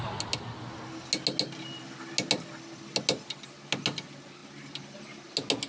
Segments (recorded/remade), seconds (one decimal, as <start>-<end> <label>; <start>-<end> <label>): 0.0-5.7 recorded